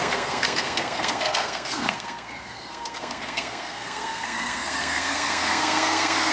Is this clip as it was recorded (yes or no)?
no